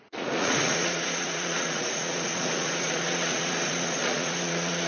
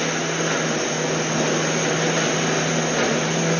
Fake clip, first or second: first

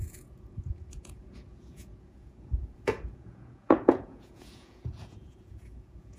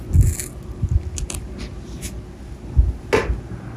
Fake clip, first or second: first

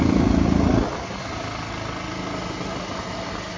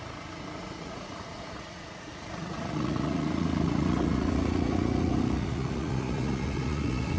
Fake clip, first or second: second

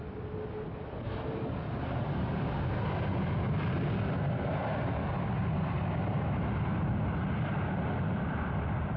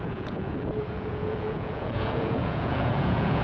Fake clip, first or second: second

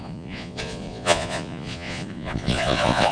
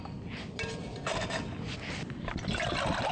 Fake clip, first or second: first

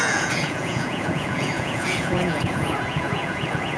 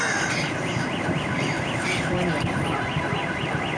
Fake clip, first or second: first